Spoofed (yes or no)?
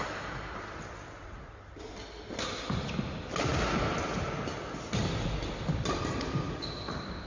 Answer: no